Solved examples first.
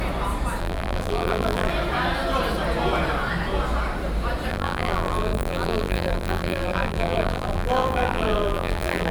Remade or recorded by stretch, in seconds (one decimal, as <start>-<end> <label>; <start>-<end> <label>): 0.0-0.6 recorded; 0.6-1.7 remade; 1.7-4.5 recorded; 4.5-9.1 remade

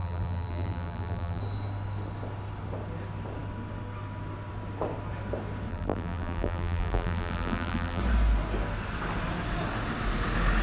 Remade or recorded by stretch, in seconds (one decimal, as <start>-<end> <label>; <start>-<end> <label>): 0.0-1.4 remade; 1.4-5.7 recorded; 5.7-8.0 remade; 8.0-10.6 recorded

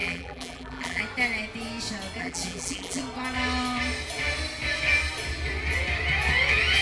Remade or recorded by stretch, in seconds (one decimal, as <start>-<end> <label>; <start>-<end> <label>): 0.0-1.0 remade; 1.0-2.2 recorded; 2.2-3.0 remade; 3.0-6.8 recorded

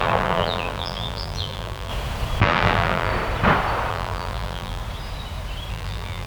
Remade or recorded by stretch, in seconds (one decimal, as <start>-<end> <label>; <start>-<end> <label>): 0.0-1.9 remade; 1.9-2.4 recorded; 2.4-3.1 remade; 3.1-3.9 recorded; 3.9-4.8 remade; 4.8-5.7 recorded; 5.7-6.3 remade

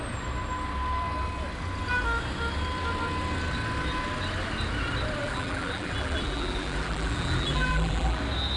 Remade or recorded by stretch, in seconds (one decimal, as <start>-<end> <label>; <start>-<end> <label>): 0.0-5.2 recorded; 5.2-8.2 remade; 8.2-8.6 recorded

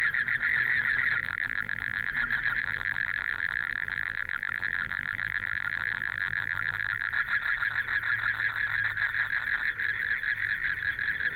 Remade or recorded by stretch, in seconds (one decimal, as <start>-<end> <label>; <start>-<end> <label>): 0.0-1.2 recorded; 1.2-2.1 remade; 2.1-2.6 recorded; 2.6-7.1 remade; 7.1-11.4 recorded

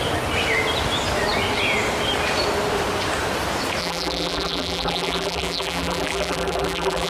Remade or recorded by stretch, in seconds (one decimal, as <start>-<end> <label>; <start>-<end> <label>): 0.0-3.8 recorded; 3.8-7.1 remade